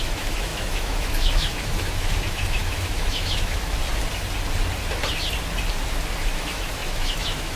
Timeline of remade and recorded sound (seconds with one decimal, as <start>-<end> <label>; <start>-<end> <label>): 0.0-3.8 remade; 3.8-6.3 recorded; 6.3-7.6 remade